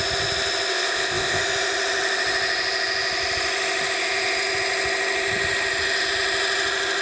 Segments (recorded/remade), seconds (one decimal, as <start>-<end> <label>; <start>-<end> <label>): 0.0-0.7 recorded; 0.7-1.4 remade; 1.4-7.0 recorded